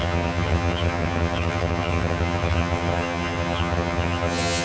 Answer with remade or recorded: remade